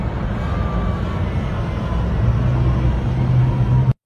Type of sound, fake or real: real